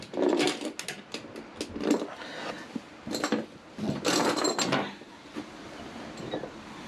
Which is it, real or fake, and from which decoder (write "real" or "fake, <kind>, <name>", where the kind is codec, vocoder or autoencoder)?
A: real